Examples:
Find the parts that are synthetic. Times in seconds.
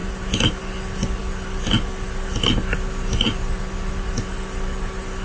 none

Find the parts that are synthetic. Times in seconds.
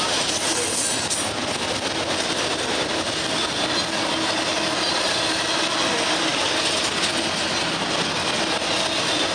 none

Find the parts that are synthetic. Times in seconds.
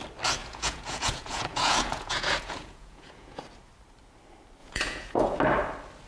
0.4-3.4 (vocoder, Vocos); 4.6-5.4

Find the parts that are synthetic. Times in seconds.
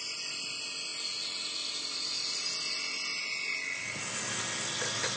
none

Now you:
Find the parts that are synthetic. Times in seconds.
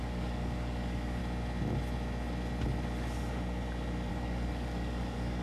0.0-1.2 (codec, DAC); 4.1-5.4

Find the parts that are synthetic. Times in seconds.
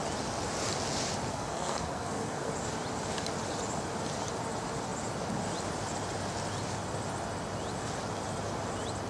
1.3-2.5 (codec, SNAC)